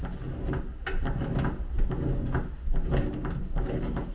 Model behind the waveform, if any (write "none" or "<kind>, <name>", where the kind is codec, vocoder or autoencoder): none